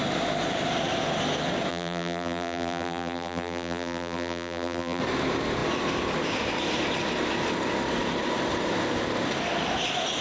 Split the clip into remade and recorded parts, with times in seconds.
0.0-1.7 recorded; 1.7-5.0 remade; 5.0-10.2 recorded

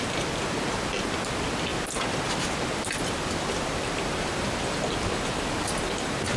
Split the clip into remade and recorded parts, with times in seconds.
0.0-6.4 recorded